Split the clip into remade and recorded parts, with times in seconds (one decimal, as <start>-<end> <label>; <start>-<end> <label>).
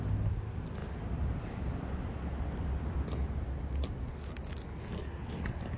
0.0-5.8 recorded